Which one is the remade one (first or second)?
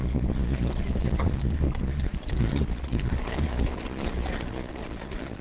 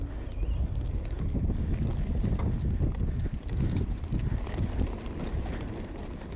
first